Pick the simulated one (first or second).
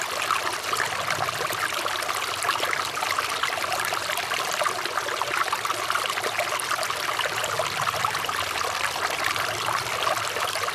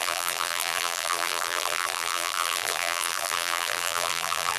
second